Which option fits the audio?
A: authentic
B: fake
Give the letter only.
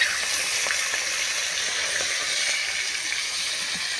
A